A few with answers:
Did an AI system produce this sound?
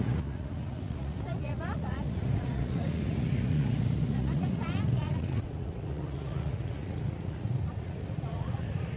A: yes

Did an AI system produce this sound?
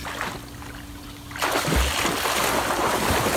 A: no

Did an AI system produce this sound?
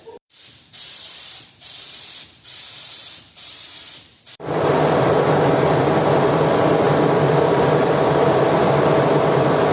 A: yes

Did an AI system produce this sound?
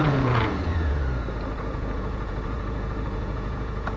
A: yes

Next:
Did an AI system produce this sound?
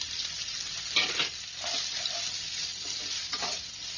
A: no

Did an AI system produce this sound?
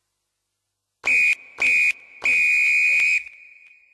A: no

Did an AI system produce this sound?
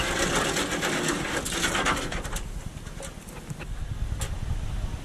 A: no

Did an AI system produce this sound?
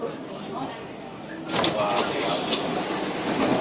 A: no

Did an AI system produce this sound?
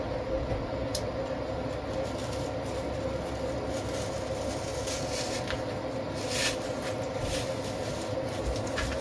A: no